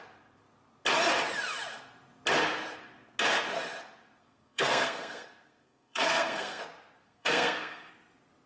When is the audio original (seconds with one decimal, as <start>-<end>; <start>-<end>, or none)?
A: 0.0-4.2; 6.6-7.0; 7.9-8.5